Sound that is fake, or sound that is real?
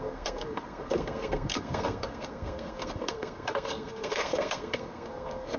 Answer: fake